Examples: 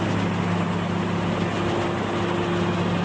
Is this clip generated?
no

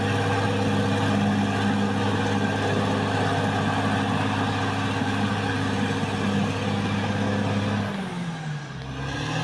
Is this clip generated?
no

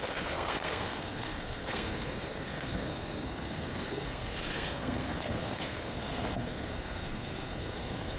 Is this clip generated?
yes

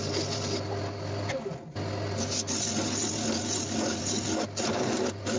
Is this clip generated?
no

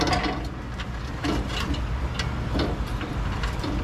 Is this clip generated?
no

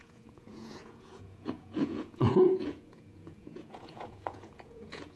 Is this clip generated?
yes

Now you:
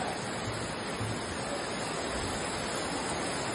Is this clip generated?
no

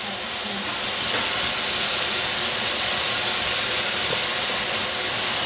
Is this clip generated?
no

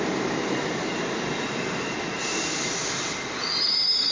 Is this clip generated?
no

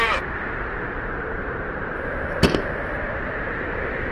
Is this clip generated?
yes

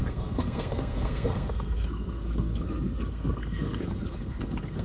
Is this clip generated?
yes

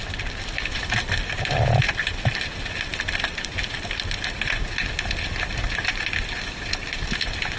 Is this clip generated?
no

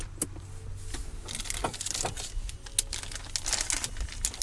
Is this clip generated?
no